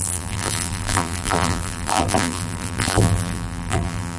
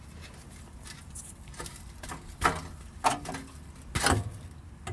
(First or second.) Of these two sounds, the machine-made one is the first